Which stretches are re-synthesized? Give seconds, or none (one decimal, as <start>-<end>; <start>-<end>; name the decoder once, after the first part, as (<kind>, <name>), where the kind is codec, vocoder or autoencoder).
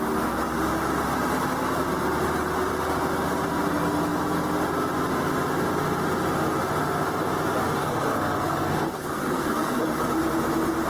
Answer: 7.8-9.8 (codec, SNAC)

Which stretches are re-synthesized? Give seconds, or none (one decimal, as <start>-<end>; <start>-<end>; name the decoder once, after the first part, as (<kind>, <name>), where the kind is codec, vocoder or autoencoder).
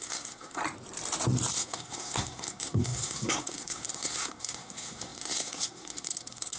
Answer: 0.0-0.6 (codec, SNAC); 1.5-6.6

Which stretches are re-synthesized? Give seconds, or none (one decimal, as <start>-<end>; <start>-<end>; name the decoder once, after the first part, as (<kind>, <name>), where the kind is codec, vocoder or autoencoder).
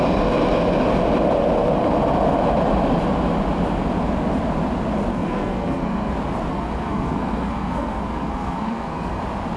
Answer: 5.1-6.1 (codec, SNAC); 6.5-9.2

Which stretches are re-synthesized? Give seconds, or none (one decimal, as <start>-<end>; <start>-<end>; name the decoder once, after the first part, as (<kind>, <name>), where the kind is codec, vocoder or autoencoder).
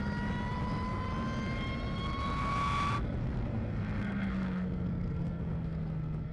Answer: 3.2-6.3 (codec, SNAC)